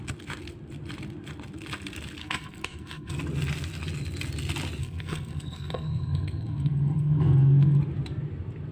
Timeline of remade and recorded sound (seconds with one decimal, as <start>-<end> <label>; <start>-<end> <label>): 0.0-2.2 recorded; 2.2-3.2 remade; 3.2-4.8 recorded; 4.8-7.8 remade; 7.8-8.7 recorded